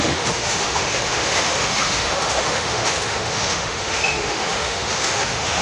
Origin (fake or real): fake